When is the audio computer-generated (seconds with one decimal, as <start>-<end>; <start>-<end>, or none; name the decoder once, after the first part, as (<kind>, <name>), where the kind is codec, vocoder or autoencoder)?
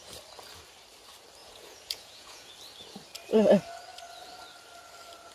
1.4-2.5 (vocoder, Vocos)